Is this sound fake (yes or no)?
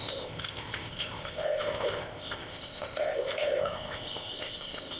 yes